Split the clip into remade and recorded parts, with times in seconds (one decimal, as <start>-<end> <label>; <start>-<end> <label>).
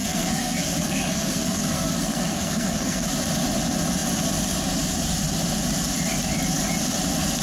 0.0-3.1 remade; 3.1-7.4 recorded